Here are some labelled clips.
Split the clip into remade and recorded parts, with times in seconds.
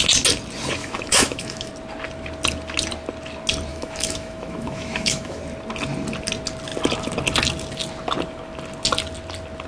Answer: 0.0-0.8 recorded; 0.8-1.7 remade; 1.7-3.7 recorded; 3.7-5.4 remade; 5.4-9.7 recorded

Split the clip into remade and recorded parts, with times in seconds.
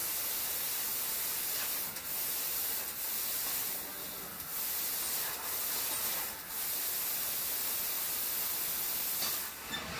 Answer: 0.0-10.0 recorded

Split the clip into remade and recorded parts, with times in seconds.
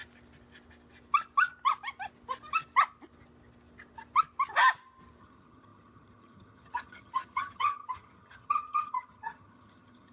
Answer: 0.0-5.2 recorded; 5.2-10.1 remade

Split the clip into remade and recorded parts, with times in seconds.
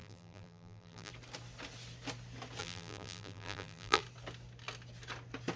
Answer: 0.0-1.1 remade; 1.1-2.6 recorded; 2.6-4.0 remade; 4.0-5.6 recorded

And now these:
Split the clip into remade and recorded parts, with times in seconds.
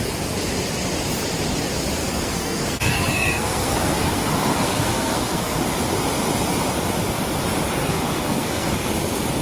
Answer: 0.0-2.0 recorded; 2.0-5.6 remade; 5.6-7.8 recorded; 7.8-8.9 remade; 8.9-9.4 recorded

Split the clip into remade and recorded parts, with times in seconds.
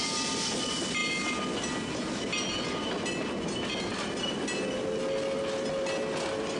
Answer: 0.0-6.6 recorded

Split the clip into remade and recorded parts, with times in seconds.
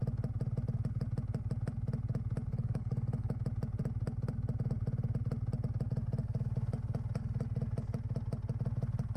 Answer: 0.0-2.5 recorded; 2.5-3.4 remade; 3.4-9.2 recorded